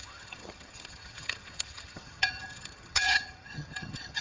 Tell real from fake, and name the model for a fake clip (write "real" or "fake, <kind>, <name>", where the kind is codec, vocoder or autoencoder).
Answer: fake, vocoder, HiFi-GAN